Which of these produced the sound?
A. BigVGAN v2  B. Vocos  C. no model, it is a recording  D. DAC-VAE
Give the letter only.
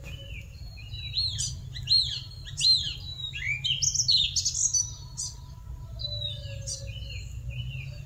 C